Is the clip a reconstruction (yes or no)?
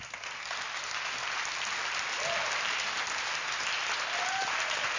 no